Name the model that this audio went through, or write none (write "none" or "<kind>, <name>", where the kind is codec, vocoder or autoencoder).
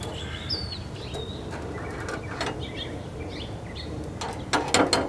none